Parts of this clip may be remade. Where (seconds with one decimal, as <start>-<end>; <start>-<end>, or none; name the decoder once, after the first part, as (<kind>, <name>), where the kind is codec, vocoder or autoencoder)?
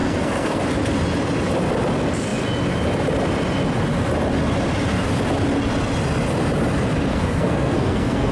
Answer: 0.0-0.6 (codec, SNAC); 7.1-8.3